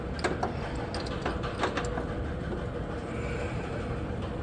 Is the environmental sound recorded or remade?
recorded